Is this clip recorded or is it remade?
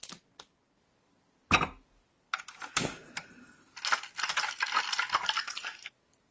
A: recorded